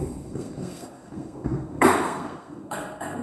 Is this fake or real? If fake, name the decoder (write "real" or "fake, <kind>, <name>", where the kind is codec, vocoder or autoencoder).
fake, codec, SNAC